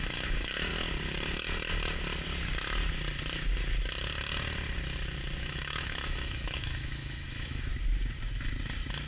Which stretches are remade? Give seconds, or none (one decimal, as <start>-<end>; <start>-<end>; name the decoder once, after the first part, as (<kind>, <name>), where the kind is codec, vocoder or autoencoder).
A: 0.0-0.7 (autoencoder, DAC-VAE); 5.4-7.7